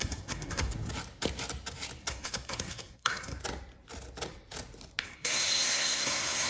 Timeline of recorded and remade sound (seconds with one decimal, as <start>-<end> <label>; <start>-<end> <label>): 0.0-0.7 remade; 0.7-2.1 recorded; 2.1-3.4 remade; 3.4-5.0 recorded; 5.0-6.5 remade